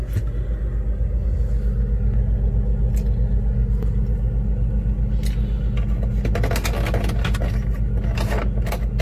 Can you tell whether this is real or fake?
real